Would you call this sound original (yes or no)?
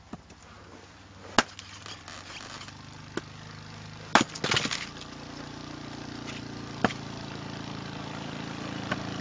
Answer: yes